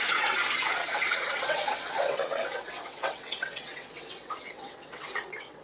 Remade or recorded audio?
remade